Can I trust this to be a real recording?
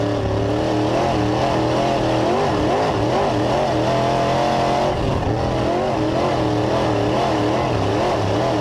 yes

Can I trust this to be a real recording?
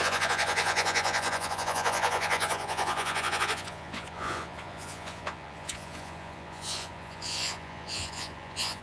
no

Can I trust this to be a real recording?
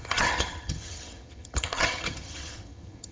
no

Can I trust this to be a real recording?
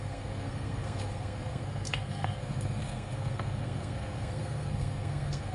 no